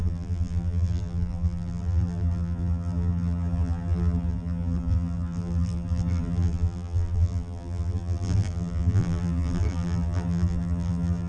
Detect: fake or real fake